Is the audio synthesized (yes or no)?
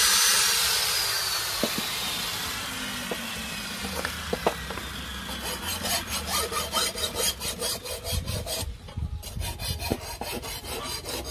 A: no